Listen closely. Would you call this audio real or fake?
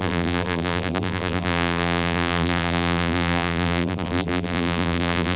fake